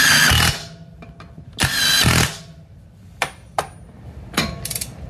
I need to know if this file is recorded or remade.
recorded